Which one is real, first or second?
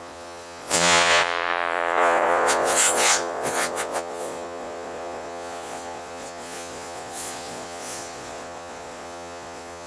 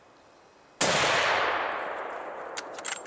second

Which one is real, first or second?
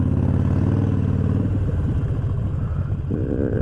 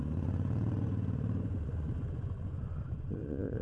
first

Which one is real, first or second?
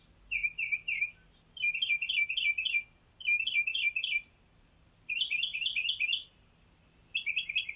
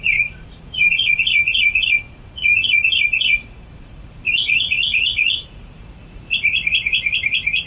first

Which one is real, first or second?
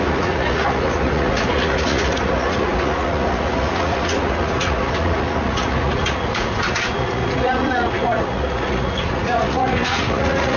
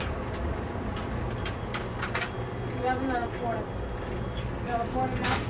second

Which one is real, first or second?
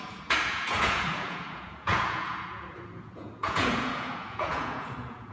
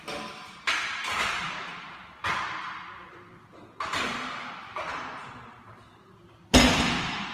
second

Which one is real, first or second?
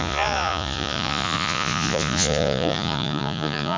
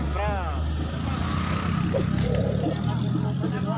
second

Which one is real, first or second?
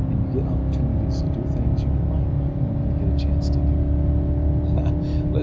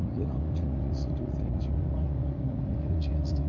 first